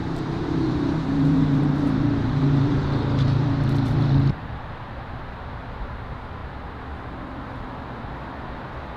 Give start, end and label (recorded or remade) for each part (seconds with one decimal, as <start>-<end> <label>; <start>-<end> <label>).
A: 0.0-4.6 remade; 4.6-9.0 recorded